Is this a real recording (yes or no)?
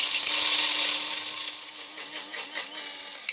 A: yes